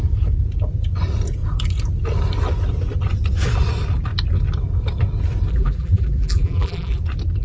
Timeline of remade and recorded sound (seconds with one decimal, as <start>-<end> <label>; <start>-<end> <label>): 0.0-5.5 recorded; 5.5-7.0 remade; 7.0-7.4 recorded